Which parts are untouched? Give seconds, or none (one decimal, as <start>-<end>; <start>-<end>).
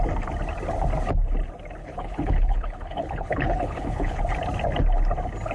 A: 0.0-1.8; 4.2-5.5